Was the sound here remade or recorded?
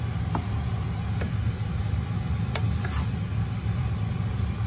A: recorded